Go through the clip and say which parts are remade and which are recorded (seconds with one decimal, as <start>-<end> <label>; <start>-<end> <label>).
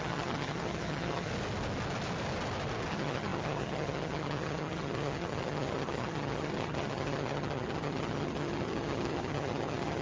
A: 0.0-1.3 remade; 1.3-2.9 recorded; 2.9-10.0 remade